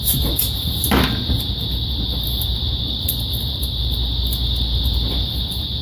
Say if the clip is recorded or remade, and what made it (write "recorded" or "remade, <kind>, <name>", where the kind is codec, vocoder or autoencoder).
recorded